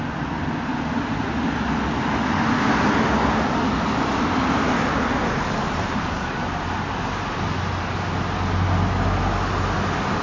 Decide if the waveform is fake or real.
real